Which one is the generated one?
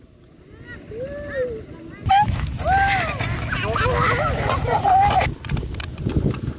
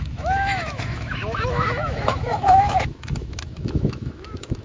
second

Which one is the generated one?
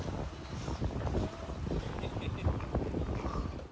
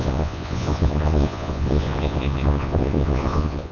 second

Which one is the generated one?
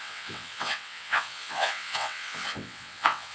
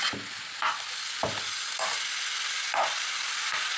first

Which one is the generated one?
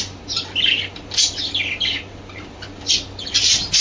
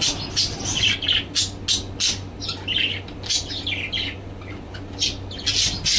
first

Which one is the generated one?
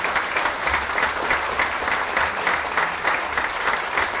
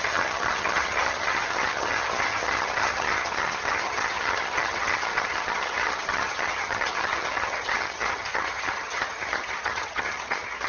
second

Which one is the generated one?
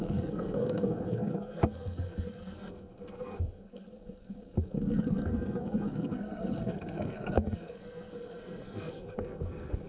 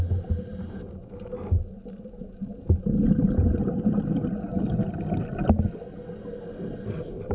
first